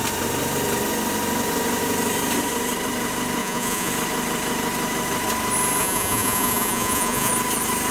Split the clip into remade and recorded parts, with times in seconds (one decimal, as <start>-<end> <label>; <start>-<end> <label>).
0.0-3.4 recorded; 3.4-3.9 remade; 3.9-5.8 recorded; 5.8-7.3 remade; 7.3-7.9 recorded